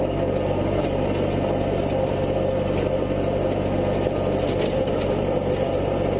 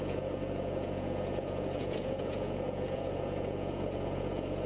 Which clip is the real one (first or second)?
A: first